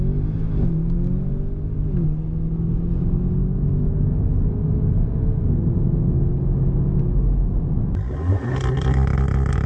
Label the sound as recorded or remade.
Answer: recorded